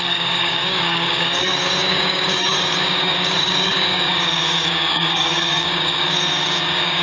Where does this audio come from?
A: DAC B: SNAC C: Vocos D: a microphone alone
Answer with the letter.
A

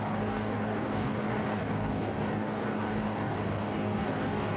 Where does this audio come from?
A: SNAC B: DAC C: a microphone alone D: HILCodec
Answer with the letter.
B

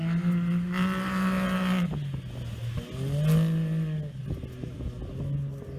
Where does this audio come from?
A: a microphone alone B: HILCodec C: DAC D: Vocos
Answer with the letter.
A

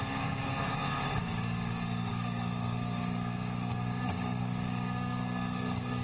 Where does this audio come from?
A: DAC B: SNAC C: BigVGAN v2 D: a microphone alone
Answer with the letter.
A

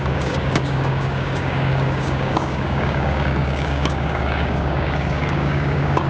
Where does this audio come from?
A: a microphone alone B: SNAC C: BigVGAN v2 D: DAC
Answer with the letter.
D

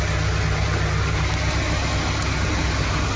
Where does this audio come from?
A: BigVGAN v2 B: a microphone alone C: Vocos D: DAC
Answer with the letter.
B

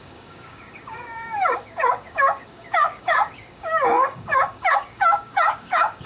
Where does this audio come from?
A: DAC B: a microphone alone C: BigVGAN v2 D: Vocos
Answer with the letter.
A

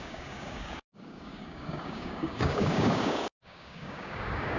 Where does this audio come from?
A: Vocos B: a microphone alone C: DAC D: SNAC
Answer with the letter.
C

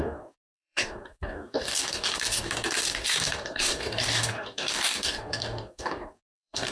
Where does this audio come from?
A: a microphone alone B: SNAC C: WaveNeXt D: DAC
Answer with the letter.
D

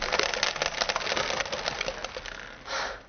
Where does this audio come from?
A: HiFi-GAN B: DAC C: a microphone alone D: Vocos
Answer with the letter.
C